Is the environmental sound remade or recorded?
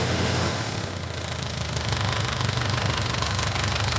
remade